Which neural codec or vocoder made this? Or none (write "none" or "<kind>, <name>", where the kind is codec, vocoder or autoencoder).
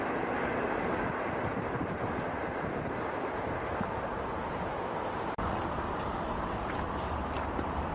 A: vocoder, BigVGAN v2